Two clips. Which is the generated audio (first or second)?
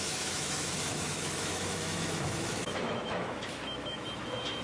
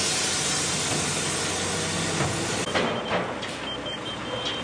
first